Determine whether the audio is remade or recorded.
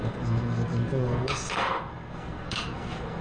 remade